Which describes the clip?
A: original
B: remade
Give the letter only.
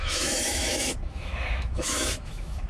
B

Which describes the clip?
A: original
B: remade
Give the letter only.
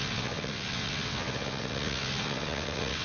B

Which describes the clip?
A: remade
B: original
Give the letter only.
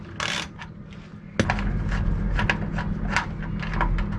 B